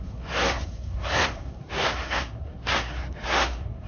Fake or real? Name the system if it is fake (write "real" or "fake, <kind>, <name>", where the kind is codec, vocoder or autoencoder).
fake, codec, SNAC